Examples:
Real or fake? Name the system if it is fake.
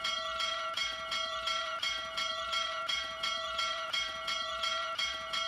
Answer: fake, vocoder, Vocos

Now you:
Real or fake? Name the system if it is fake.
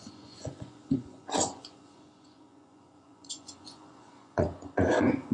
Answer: fake, vocoder, Vocos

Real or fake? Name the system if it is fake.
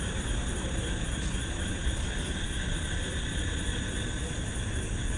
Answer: real